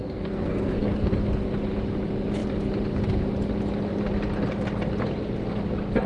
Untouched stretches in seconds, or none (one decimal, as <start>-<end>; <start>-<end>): 1.2-6.1